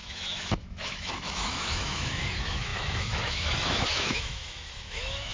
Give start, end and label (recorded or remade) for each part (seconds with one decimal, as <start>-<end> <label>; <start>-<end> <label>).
0.0-5.3 remade